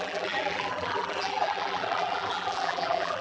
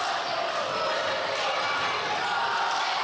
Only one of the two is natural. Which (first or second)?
second